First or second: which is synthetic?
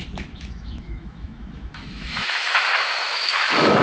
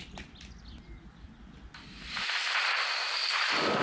first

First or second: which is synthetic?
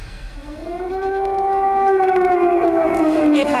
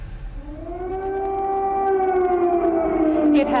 first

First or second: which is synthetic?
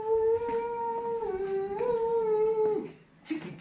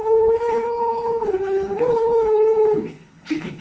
second